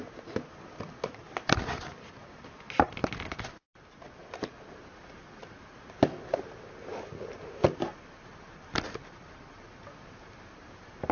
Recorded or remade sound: recorded